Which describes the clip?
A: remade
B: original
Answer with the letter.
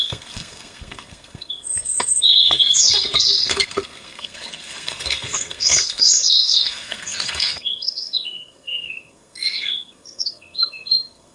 A